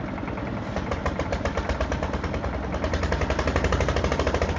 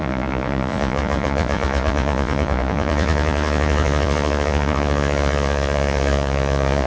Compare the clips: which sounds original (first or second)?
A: first